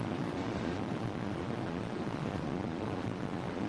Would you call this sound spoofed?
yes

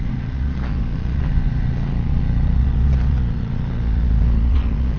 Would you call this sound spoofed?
yes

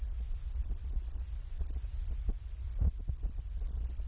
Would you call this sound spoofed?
no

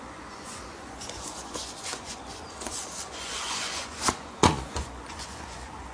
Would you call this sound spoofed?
yes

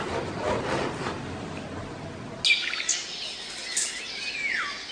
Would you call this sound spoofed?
no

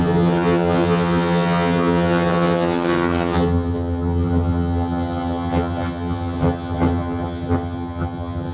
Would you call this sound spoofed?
yes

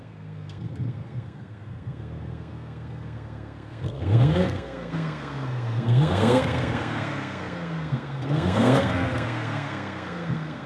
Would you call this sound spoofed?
yes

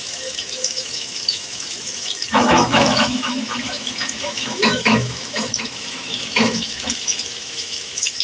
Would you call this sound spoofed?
yes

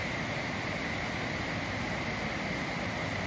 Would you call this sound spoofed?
no